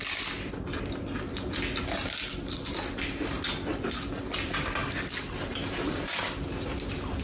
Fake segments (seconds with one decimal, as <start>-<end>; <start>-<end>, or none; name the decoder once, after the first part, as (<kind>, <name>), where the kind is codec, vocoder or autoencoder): none